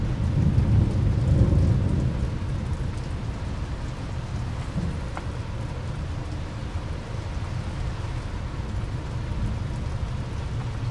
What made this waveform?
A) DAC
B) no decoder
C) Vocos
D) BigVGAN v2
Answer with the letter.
B